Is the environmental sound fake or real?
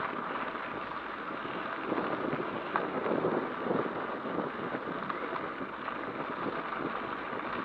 real